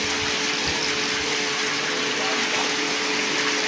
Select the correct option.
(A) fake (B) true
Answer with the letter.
B